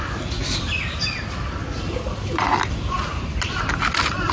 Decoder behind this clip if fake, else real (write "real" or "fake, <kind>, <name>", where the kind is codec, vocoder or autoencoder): real